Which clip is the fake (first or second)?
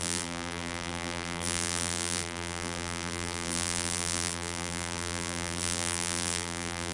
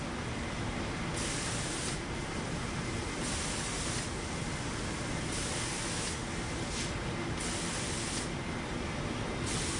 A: first